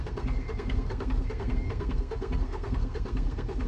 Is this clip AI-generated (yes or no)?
yes